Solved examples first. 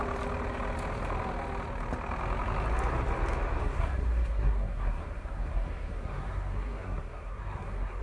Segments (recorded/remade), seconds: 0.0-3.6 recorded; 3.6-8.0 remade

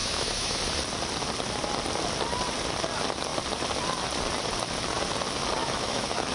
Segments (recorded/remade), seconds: 0.0-0.6 remade; 0.6-5.6 recorded; 5.6-6.3 remade

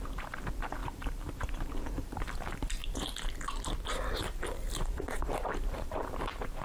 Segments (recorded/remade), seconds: 0.0-2.8 remade; 2.8-4.2 recorded; 4.2-6.6 remade

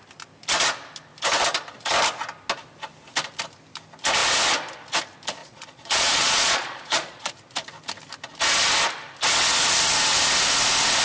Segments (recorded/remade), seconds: 0.0-5.4 recorded; 5.4-7.3 remade; 7.3-11.0 recorded

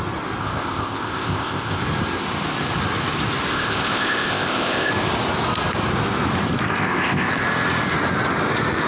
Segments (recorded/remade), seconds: 0.0-0.4 recorded; 0.4-1.8 remade; 1.8-3.5 recorded; 3.5-4.9 remade; 4.9-6.7 recorded; 6.7-7.3 remade; 7.3-8.9 recorded

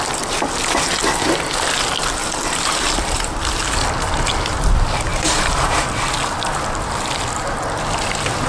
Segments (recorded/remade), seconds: 0.0-2.2 recorded; 2.2-3.4 remade; 3.4-5.1 recorded; 5.1-5.9 remade; 5.9-8.5 recorded

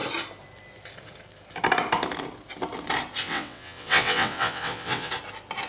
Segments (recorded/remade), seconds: 0.0-3.2 recorded; 3.2-5.1 remade; 5.1-5.7 recorded